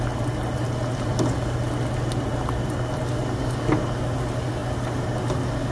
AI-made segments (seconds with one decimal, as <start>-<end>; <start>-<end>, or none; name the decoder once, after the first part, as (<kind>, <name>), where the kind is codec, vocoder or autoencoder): none